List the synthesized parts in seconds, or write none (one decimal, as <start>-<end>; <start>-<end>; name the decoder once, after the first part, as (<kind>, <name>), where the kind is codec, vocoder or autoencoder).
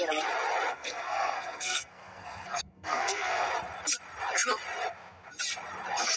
0.7-3.5 (codec, SNAC)